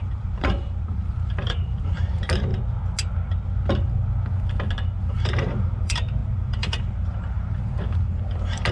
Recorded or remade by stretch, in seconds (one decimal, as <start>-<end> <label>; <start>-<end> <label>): 0.0-2.5 remade; 2.5-5.0 recorded; 5.0-8.7 remade